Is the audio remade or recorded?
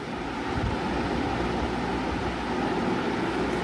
recorded